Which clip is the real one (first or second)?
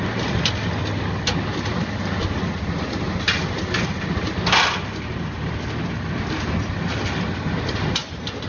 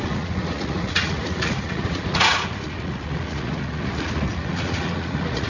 first